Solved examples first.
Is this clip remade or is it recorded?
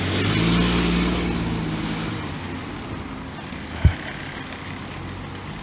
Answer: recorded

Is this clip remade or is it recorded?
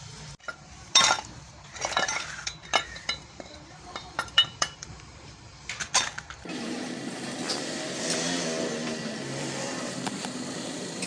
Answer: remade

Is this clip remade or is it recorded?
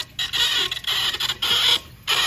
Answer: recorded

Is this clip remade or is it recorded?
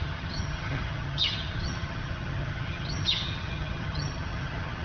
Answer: remade